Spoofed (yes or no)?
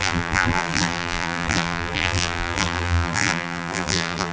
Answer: yes